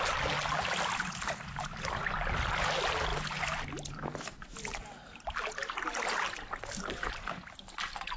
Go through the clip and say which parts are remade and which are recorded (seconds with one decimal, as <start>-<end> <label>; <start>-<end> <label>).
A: 0.0-8.2 recorded